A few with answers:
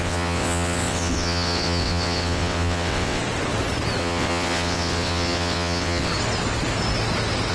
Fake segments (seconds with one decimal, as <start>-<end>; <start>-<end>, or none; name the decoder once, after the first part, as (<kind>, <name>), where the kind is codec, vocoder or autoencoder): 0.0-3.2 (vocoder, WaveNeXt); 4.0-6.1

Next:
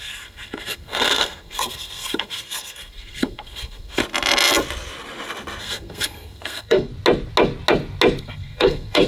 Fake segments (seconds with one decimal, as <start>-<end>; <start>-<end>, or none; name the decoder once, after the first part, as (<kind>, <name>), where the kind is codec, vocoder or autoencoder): 0.0-4.0 (codec, SNAC); 5.6-6.9; 8.2-9.1

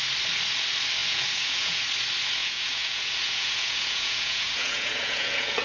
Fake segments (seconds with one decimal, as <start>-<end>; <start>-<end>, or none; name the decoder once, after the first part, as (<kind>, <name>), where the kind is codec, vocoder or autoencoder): 1.0-1.8 (vocoder, Vocos); 2.4-5.6

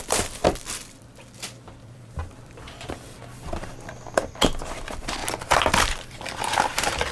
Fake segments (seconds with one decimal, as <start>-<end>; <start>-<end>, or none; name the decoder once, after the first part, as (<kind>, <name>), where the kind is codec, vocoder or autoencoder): 0.0-0.4 (vocoder, BigVGAN v2); 1.0-5.2; 5.8-7.1

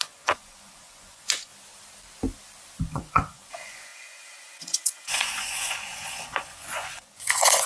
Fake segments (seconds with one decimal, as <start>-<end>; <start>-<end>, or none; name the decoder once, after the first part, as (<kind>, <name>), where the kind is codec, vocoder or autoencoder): 0.0-1.5 (vocoder, Vocos); 2.8-7.7

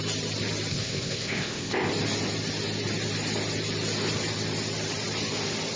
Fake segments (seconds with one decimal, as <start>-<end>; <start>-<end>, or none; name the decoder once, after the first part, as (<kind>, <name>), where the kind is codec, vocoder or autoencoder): 0.7-1.9 (codec, ZipCodec)

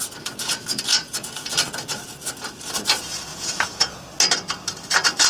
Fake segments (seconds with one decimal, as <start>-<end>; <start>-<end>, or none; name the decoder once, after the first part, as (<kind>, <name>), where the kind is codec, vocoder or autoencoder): 0.9-1.5 (vocoder, Vocos); 3.3-4.1

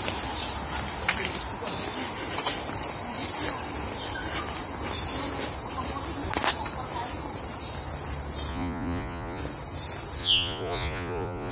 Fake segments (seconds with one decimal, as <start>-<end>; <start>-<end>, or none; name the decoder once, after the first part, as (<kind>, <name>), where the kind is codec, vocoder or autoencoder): 8.5-9.4 (vocoder, Vocos); 10.2-11.5